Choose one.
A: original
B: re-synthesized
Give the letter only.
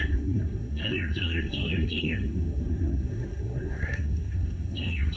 B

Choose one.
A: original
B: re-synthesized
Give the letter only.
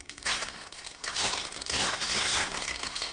B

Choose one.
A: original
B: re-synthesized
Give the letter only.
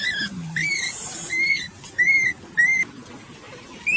A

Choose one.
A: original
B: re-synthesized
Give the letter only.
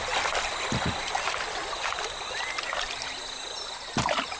A